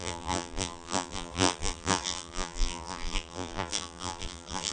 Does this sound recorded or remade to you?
remade